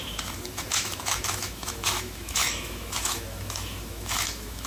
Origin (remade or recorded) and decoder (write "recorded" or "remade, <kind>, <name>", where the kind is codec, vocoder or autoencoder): remade, autoencoder, DAC-VAE